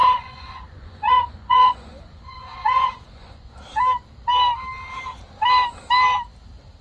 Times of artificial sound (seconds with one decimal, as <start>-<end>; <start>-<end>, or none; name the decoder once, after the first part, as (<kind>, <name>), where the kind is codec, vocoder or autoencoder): 0.0-3.6 (vocoder, Vocos)